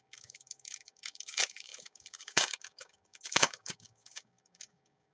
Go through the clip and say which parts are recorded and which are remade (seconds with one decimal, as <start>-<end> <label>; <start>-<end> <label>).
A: 0.0-5.1 remade